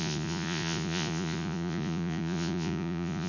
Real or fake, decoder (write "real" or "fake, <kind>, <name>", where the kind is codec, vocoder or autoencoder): fake, vocoder, Vocos